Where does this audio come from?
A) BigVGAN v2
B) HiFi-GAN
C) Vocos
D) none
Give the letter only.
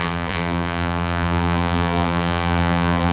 A